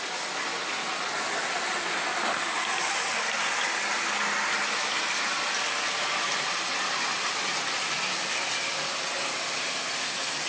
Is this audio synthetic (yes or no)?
no